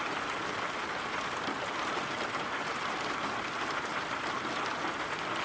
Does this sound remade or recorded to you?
recorded